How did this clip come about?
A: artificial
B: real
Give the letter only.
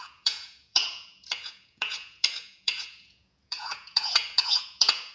A